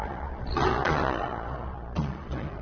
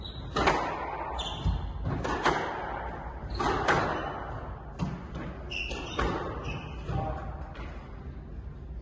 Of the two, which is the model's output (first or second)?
first